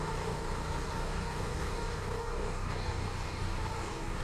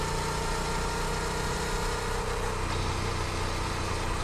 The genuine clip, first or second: second